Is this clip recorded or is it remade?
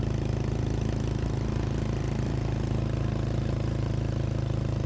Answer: recorded